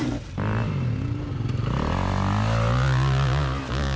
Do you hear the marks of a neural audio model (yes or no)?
no